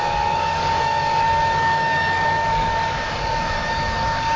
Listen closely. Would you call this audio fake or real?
fake